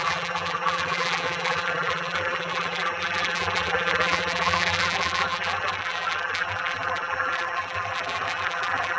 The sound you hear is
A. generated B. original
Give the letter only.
A